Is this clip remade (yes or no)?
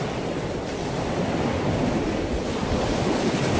no